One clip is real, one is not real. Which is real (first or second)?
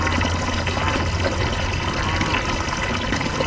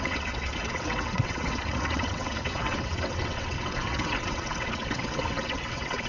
first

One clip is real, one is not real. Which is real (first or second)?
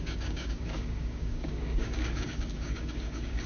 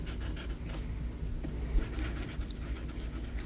second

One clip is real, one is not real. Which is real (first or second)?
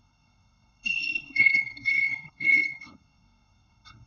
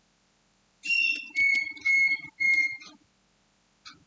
second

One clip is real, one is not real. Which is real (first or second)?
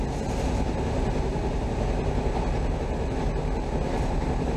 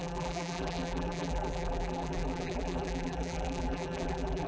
first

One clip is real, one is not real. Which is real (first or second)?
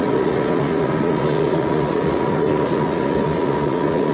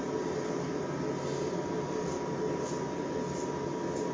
second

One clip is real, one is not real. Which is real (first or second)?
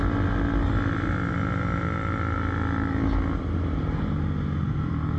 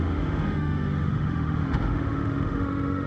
first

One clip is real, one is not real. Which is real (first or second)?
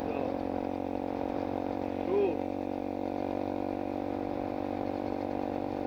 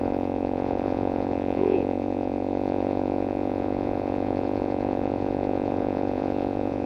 first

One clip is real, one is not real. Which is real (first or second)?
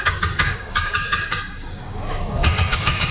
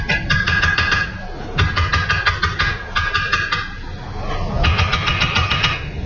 second